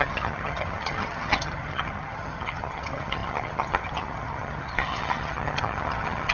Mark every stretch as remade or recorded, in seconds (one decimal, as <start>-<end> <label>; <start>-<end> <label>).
0.0-6.3 remade